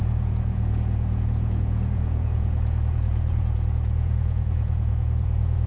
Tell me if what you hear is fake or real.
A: fake